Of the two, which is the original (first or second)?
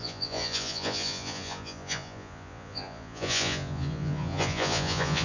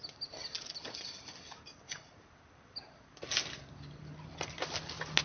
second